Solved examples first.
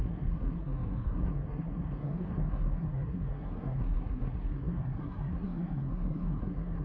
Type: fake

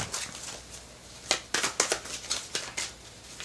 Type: real